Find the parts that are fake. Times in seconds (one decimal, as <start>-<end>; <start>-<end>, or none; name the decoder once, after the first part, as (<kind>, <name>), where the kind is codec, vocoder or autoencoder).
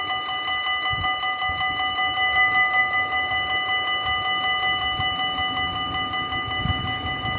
none